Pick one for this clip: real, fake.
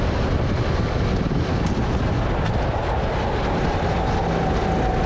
real